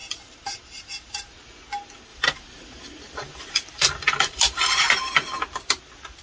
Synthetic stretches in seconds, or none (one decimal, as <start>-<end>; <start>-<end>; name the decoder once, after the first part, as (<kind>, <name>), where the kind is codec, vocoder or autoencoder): 0.0-1.4 (vocoder, BigVGAN v2); 2.1-4.9